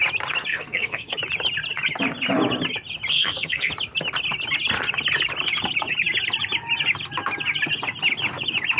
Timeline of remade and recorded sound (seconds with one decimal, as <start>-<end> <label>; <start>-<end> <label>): 0.0-0.5 recorded; 0.5-1.2 remade; 1.2-3.1 recorded; 3.1-3.7 remade; 3.7-8.8 recorded